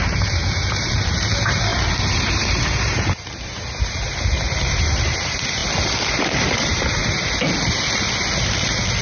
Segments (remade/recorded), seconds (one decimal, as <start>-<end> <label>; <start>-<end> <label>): 0.0-5.6 remade; 5.6-6.1 recorded; 6.1-7.0 remade; 7.0-9.0 recorded